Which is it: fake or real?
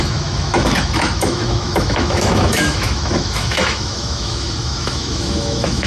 fake